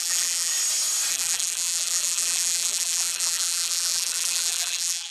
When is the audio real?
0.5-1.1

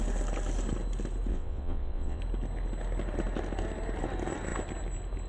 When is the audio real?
0.0-1.3; 2.2-5.3

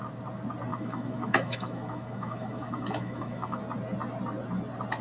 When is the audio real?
0.0-0.7; 3.6-5.0

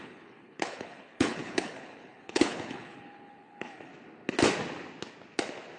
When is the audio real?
3.9-5.8

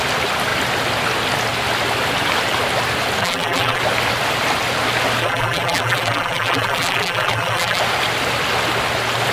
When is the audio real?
0.0-3.2; 3.8-5.2; 7.8-9.3

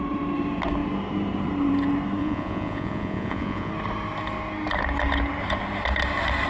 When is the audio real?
0.0-2.2; 3.7-6.5

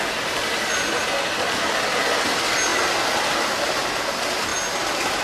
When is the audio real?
0.0-5.2

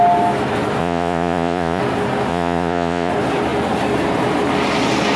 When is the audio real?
0.0-0.8; 1.8-2.3; 3.1-5.2